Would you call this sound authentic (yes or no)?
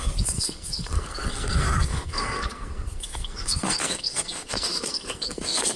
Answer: no